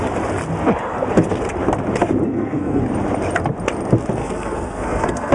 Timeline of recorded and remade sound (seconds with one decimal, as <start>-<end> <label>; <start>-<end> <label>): 0.0-2.3 recorded; 2.3-2.8 remade; 2.8-4.2 recorded; 4.2-5.3 remade